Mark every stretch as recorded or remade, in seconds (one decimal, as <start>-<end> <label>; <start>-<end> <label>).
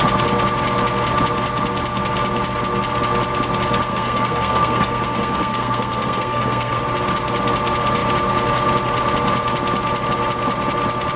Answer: 0.0-3.9 recorded; 3.9-6.8 remade; 6.8-11.2 recorded